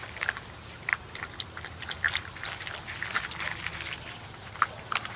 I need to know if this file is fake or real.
real